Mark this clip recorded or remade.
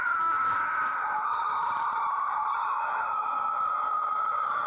recorded